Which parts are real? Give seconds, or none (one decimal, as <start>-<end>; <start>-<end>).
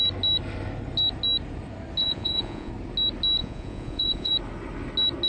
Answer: 0.0-2.0; 2.7-3.4; 4.3-5.3